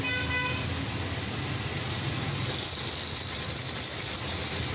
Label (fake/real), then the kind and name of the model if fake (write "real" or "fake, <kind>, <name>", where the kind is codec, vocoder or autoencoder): real